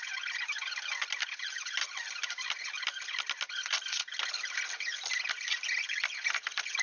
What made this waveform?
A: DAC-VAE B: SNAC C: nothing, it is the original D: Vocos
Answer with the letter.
C